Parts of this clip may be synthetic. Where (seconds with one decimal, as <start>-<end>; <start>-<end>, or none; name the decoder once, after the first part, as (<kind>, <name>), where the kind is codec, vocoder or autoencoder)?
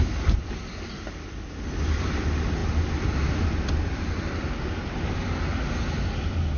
none